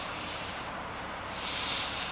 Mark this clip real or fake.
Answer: fake